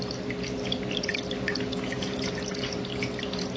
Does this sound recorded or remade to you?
recorded